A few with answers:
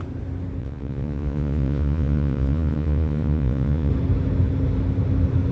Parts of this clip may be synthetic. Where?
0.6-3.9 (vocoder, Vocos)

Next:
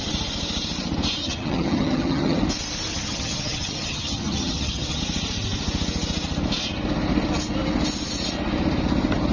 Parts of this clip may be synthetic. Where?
1.2-2.4 (vocoder, HiFi-GAN); 2.9-5.0

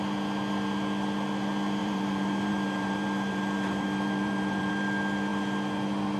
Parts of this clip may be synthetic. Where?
1.8-4.7 (vocoder, BigVGAN v2)